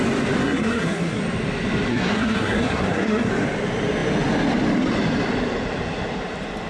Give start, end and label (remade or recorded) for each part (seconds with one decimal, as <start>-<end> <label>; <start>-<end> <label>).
0.0-0.4 recorded; 0.4-1.2 remade; 1.2-1.9 recorded; 1.9-3.3 remade; 3.3-6.7 recorded